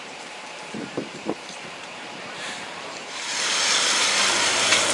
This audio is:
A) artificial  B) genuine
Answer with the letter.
A